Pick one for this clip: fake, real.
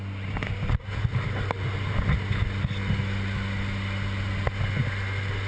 real